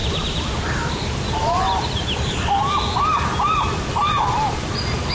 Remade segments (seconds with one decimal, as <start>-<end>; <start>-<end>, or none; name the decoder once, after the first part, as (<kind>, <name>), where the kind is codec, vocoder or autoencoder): 0.0-2.7 (vocoder, BigVGAN v2)